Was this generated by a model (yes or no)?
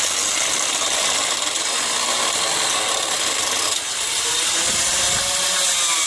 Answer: no